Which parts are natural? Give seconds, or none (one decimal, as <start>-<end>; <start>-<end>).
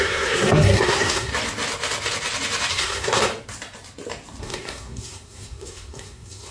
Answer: 1.3-2.7; 3.3-4.4